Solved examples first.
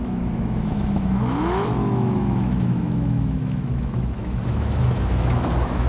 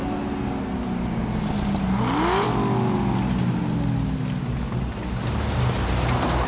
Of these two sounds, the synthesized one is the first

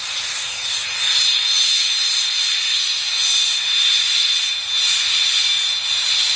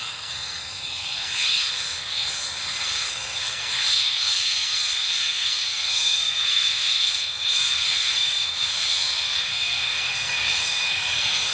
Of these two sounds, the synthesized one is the second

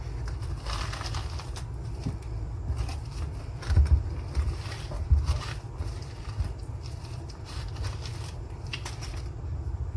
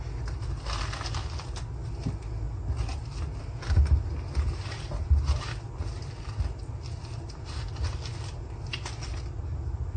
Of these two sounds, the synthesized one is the first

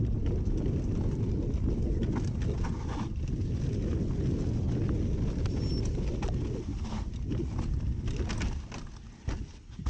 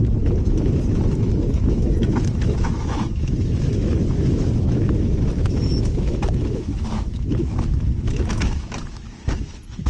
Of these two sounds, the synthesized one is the second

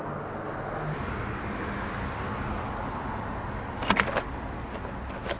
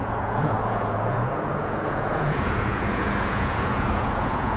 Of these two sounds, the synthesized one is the second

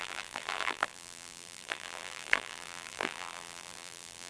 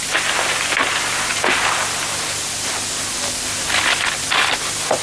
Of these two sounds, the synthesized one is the first